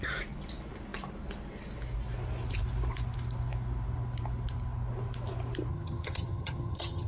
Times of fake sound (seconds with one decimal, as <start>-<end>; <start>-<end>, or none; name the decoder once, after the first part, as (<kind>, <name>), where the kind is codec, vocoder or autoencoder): 5.7-7.1 (vocoder, HiFi-GAN)